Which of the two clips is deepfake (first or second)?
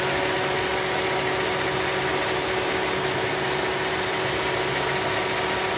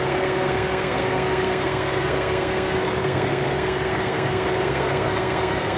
second